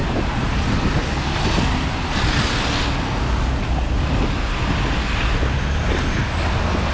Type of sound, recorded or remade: recorded